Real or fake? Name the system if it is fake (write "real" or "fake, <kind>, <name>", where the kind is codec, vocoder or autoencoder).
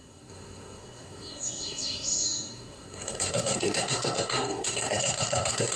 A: fake, codec, SNAC